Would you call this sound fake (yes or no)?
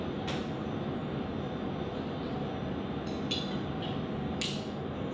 no